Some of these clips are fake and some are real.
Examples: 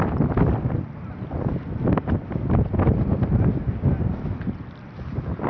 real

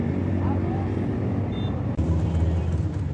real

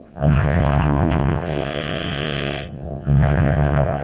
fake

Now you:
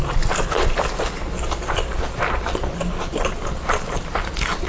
real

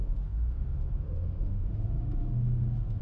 fake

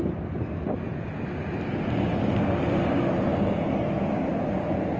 real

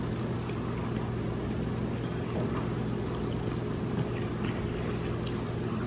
real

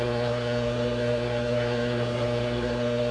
fake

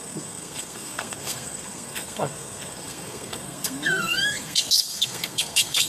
fake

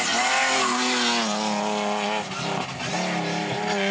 real